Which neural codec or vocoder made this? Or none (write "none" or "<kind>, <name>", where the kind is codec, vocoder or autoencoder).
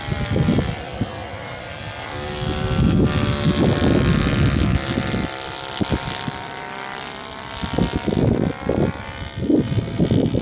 none